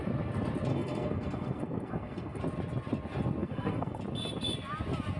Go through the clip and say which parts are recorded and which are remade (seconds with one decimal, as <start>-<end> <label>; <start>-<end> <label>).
0.0-0.7 recorded; 0.7-2.4 remade; 2.4-3.4 recorded; 3.4-4.0 remade; 4.0-5.2 recorded